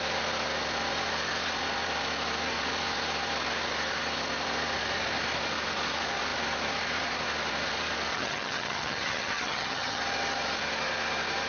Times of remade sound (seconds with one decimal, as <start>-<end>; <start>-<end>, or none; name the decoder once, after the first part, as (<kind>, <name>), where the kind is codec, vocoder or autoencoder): 8.1-10.0 (vocoder, HiFi-GAN)